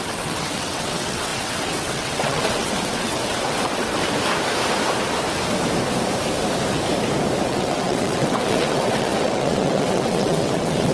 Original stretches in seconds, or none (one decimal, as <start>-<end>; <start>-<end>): 4.0-7.5